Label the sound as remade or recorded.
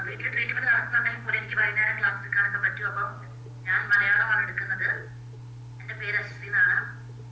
recorded